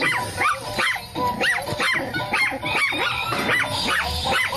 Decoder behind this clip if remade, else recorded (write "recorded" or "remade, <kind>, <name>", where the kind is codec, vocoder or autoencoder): recorded